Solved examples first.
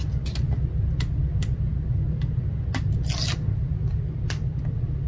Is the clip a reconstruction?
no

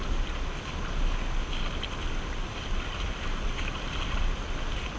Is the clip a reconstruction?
no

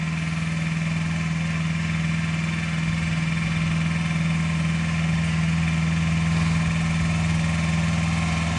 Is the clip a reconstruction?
no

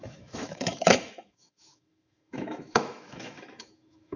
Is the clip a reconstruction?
yes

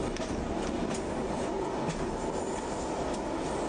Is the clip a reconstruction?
no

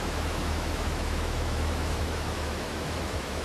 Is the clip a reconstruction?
yes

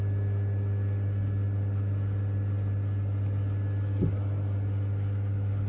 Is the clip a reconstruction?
no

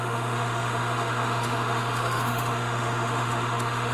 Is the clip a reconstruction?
yes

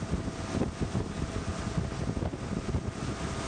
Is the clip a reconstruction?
no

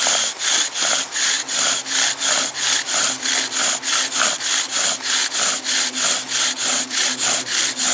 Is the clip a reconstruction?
no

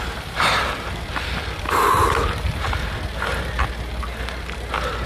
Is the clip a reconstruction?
no